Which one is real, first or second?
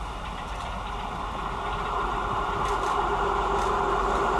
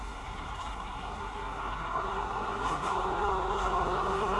first